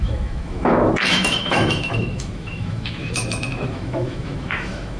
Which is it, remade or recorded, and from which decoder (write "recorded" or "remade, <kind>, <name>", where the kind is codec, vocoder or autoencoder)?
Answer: remade, autoencoder, DAC-VAE